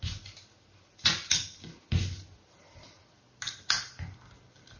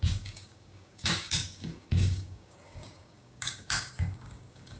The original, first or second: first